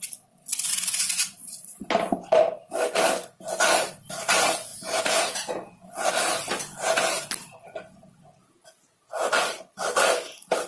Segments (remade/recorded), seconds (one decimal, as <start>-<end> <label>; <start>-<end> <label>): 0.0-4.7 recorded; 4.7-6.1 remade; 6.1-8.4 recorded; 8.4-9.3 remade; 9.3-10.7 recorded